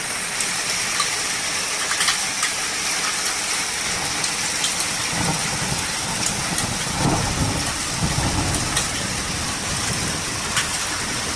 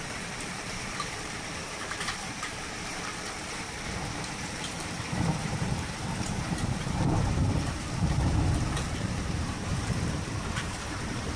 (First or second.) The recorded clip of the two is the first